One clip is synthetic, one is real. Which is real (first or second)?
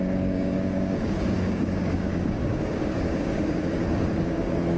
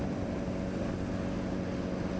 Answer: second